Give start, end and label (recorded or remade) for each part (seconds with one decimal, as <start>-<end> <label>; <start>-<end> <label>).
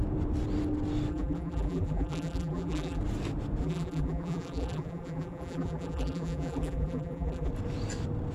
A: 0.0-1.1 recorded; 1.1-3.0 remade; 3.0-3.6 recorded; 3.6-7.5 remade; 7.5-8.3 recorded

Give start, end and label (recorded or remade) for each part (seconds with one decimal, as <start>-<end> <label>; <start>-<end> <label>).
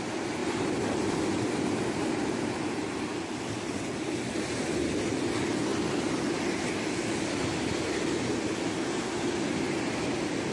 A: 0.0-0.4 recorded; 0.4-4.4 remade; 4.4-10.5 recorded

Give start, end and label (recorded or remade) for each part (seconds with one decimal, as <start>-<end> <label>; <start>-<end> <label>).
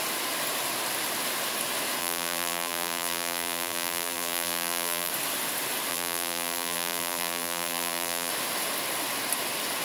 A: 0.0-2.0 recorded; 2.0-5.1 remade; 5.1-5.9 recorded; 5.9-8.3 remade; 8.3-9.8 recorded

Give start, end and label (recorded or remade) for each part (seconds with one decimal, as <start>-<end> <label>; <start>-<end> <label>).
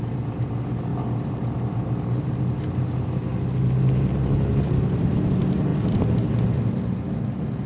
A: 0.0-0.9 recorded; 0.9-1.9 remade; 1.9-4.5 recorded; 4.5-5.2 remade; 5.2-7.7 recorded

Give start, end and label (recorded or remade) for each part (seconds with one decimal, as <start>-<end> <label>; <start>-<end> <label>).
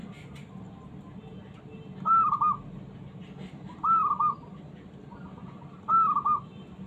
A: 0.0-6.9 recorded